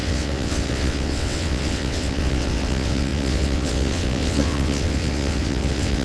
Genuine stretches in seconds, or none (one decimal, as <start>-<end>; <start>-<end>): none